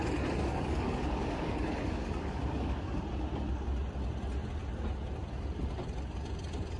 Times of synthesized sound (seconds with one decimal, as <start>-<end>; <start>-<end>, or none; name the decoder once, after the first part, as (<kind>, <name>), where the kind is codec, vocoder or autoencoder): 0.4-3.0 (codec, DAC)